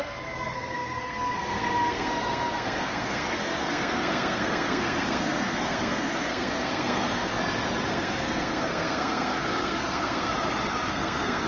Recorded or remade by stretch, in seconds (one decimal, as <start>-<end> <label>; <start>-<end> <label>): 0.0-7.3 remade; 7.3-7.9 recorded; 7.9-10.3 remade; 10.3-10.9 recorded; 10.9-11.5 remade